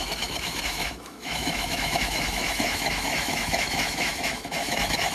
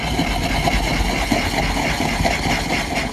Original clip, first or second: second